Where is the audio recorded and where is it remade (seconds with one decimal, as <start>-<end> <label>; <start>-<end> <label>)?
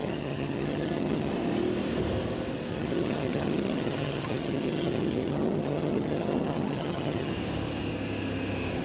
0.0-1.3 remade; 1.3-2.7 recorded; 2.7-7.3 remade; 7.3-8.8 recorded